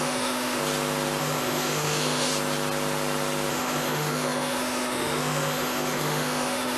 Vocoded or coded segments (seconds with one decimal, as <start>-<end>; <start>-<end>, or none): 0.0-0.6; 1.2-2.3; 3.5-6.8